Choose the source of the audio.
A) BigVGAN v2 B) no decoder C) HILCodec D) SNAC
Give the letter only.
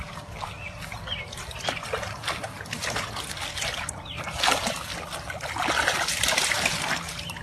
B